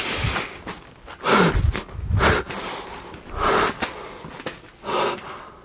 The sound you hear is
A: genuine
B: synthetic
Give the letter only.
A